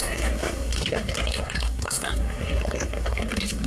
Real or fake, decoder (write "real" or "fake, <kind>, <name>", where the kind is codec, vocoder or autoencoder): fake, codec, SNAC